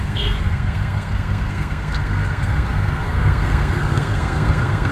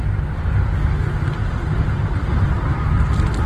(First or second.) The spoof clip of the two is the first